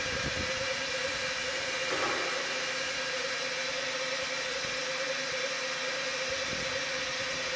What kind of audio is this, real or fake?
real